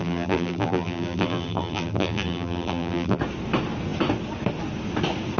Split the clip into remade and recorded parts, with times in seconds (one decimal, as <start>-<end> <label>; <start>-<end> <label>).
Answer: 0.0-3.2 remade; 3.2-5.4 recorded